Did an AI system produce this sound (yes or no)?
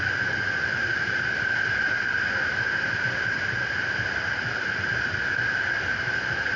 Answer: no